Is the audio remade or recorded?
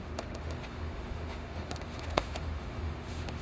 remade